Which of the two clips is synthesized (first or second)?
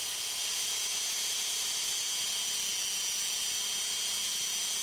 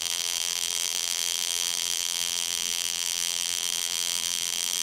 second